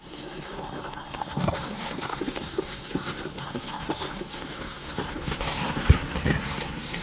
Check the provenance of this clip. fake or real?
fake